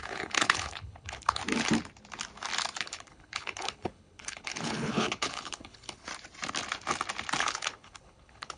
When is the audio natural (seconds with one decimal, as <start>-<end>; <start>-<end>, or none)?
1.4-2.8; 6.1-7.4